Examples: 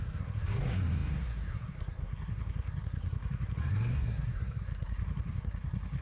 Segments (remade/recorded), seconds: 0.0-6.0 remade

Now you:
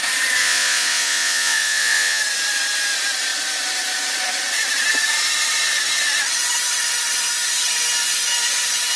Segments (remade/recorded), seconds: 0.0-0.4 recorded; 0.4-2.2 remade; 2.2-9.0 recorded

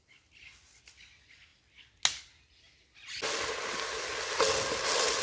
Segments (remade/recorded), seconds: 0.0-5.2 recorded

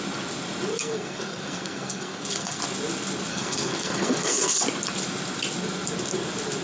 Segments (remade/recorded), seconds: 0.0-0.7 recorded; 0.7-2.6 remade; 2.6-3.3 recorded; 3.3-4.6 remade; 4.6-6.6 recorded

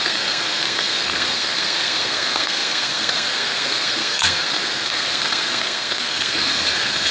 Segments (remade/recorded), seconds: 0.0-7.1 remade

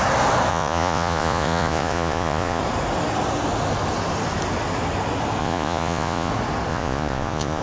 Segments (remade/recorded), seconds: 0.0-0.5 recorded; 0.5-2.6 remade; 2.6-5.4 recorded; 5.4-6.3 remade; 6.3-6.7 recorded; 6.7-7.6 remade

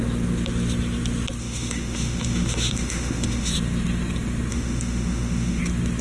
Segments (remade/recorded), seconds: 0.0-1.4 recorded; 1.4-3.5 remade; 3.5-4.5 recorded; 4.5-5.6 remade; 5.6-6.0 recorded

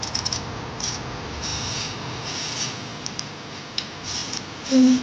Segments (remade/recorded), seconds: 0.0-5.0 recorded